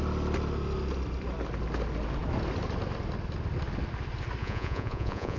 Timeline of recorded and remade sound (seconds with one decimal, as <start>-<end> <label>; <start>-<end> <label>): 0.0-4.4 recorded; 4.4-5.4 remade